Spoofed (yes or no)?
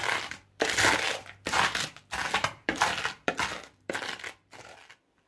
yes